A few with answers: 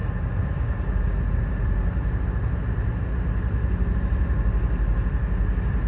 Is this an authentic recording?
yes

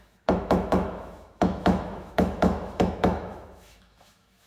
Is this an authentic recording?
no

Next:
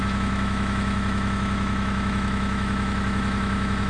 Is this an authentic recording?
no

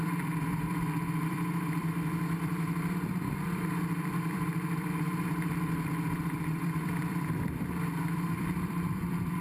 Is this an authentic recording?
no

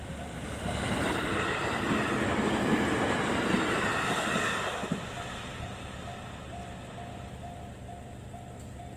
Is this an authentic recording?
yes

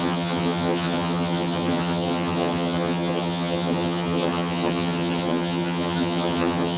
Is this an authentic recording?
no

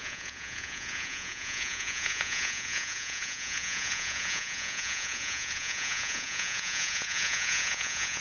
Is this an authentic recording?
no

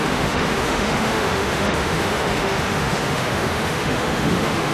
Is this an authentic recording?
no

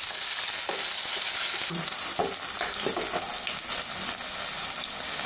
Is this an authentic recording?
yes